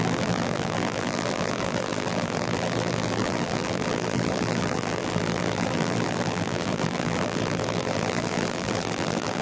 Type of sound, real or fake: fake